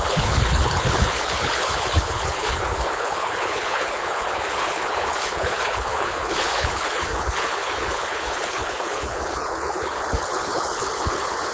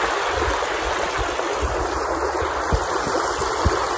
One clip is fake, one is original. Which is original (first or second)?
second